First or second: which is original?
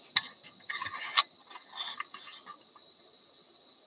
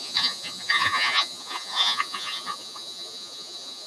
first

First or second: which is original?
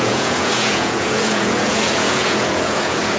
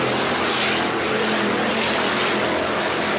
second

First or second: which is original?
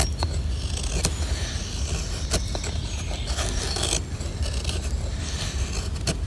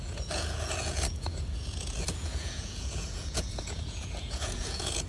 first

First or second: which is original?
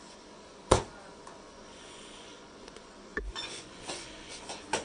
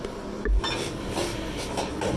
second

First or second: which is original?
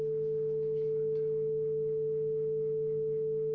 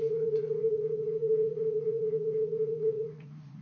first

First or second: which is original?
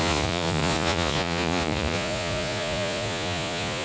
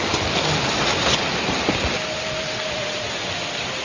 second